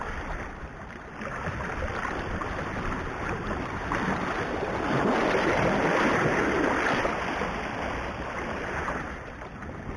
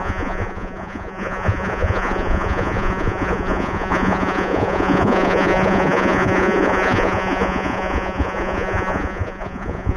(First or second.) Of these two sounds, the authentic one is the first